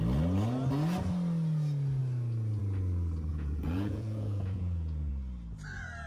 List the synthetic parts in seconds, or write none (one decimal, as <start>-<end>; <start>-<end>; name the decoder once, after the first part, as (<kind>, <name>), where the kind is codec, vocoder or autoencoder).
3.3-5.1 (vocoder, Vocos)